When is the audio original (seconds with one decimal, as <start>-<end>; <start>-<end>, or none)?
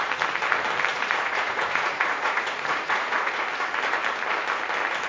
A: 0.0-0.9; 3.4-5.1